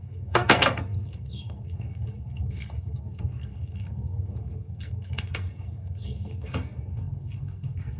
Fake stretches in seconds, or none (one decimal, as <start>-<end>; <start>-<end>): 0.0-8.0